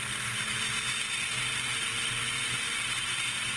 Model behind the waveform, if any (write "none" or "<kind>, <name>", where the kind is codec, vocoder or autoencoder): none